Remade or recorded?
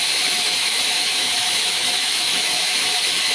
remade